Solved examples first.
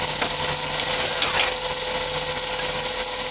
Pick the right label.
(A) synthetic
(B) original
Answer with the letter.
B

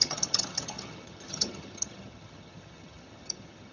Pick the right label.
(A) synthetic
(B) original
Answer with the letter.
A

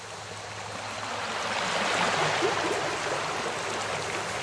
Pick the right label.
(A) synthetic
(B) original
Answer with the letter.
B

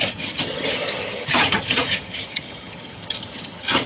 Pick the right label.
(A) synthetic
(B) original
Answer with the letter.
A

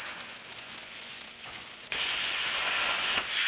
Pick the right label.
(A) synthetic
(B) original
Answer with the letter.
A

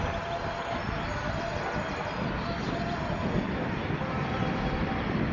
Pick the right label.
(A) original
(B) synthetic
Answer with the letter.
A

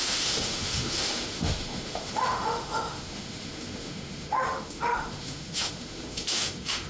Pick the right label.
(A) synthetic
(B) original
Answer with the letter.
A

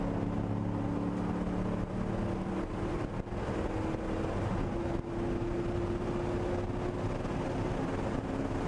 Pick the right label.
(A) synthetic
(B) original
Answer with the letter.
B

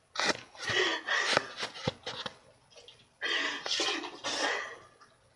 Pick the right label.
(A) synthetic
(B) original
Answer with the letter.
B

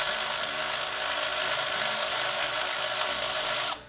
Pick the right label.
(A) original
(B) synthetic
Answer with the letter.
A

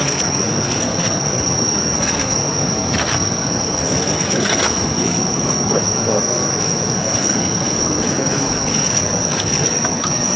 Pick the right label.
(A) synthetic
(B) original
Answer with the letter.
A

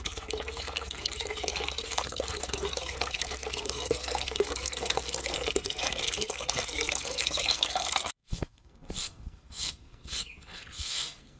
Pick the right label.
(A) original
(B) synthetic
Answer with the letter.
B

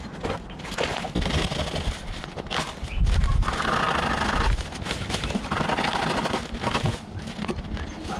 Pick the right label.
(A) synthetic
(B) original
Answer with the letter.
B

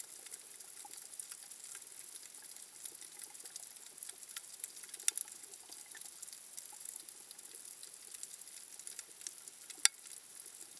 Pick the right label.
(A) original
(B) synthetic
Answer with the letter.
A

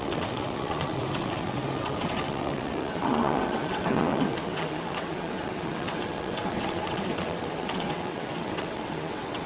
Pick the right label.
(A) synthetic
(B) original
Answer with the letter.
A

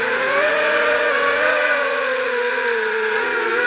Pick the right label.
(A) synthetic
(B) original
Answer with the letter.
A